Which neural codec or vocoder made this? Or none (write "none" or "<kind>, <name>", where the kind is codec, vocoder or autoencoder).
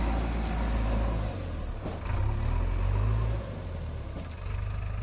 none